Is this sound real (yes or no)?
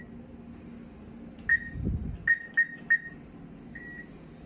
yes